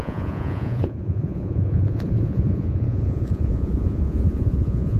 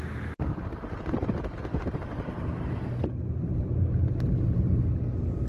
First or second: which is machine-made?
first